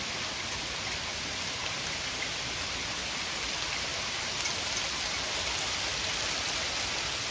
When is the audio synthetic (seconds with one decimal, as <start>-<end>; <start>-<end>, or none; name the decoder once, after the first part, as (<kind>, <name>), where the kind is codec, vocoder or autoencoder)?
none